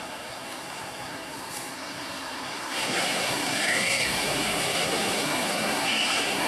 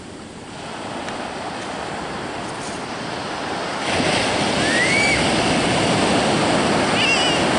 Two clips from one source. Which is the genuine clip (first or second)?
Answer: second